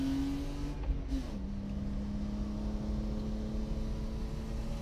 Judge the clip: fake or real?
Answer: real